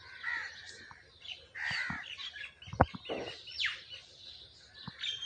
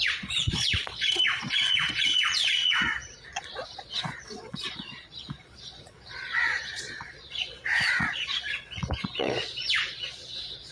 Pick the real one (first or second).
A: first